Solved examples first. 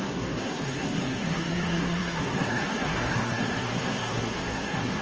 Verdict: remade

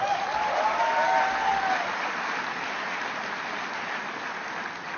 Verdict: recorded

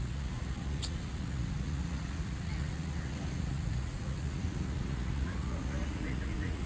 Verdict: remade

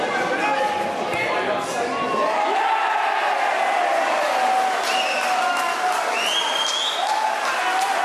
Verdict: recorded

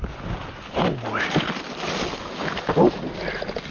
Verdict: recorded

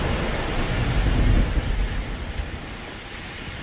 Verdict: recorded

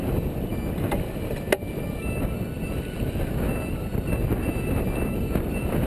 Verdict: recorded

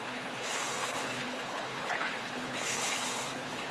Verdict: remade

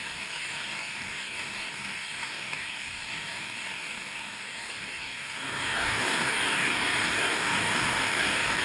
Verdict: remade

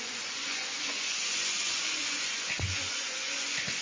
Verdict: remade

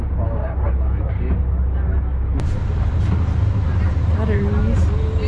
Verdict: recorded